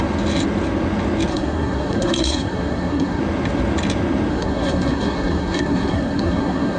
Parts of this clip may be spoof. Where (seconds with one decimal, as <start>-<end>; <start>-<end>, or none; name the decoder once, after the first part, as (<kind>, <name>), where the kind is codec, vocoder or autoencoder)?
1.3-3.2 (codec, SNAC); 4.3-6.8